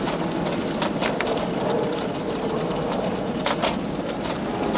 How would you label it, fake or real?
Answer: real